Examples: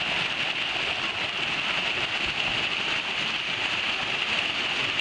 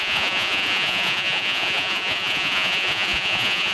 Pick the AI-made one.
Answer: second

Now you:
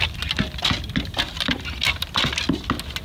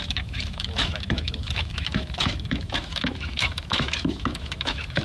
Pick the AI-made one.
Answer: second